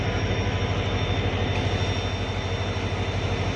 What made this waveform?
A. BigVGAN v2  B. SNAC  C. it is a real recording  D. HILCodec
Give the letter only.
C